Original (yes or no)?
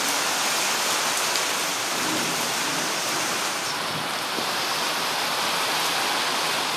no